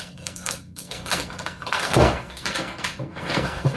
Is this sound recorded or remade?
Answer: remade